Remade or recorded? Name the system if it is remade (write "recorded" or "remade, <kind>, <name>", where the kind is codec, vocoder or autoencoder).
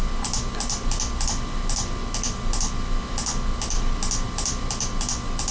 recorded